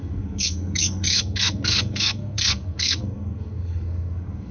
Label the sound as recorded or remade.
remade